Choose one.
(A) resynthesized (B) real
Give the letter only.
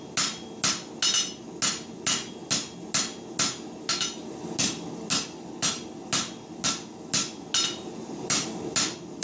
B